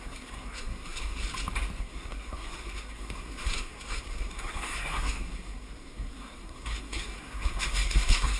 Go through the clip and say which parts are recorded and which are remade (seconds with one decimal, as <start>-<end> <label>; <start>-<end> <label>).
0.0-1.2 remade; 1.2-1.8 recorded; 1.8-8.4 remade